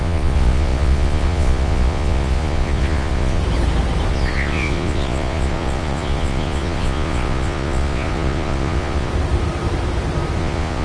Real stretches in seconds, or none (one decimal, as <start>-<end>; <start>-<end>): 3.4-4.1; 9.1-10.4